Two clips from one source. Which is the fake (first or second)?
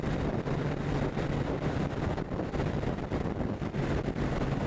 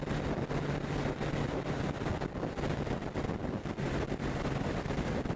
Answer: first